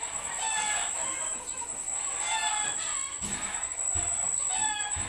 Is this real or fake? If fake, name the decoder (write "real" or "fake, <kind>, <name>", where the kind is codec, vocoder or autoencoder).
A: real